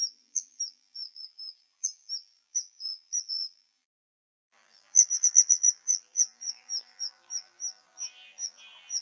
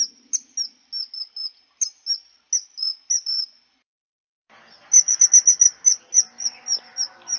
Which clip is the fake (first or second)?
first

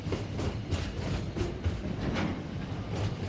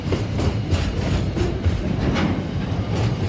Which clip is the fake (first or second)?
second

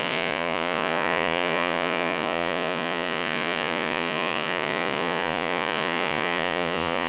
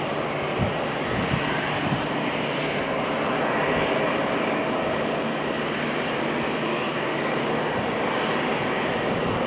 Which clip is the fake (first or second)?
first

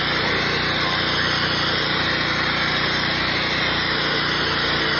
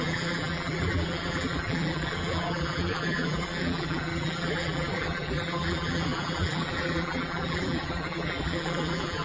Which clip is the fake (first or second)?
second